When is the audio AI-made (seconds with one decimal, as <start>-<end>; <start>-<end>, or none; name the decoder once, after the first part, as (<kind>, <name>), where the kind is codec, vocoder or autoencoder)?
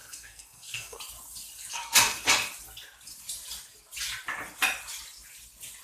0.0-1.0 (codec, SNAC); 1.7-2.3